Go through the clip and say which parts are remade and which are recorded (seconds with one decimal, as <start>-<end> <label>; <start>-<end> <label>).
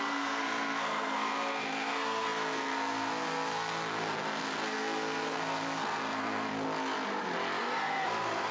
0.0-6.5 remade; 6.5-7.6 recorded; 7.6-8.5 remade